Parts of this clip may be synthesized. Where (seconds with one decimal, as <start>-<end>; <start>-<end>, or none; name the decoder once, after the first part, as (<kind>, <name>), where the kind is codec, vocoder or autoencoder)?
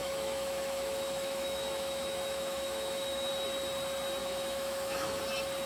0.0-3.3 (autoencoder, DAC-VAE); 4.2-5.2